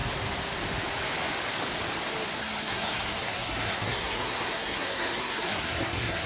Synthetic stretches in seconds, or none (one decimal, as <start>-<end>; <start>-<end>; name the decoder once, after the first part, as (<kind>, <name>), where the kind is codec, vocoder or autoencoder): 2.4-6.3 (codec, SNAC)